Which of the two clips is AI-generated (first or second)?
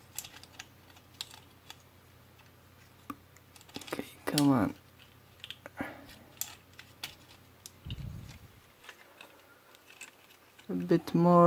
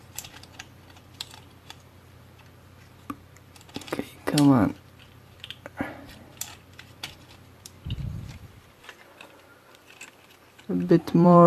second